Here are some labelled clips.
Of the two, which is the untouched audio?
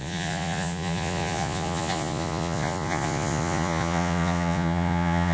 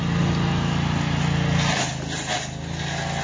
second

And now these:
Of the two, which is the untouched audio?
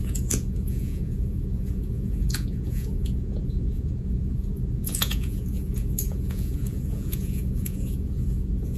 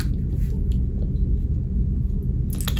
second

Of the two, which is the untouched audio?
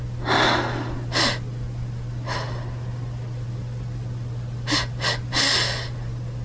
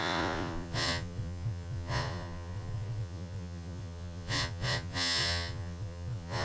first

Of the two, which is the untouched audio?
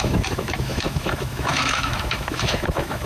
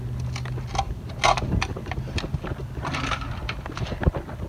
second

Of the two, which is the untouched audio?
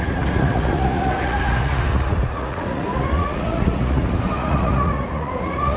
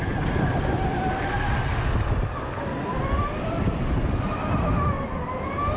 second